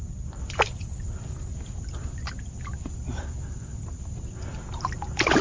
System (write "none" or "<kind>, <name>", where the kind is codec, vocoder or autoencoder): none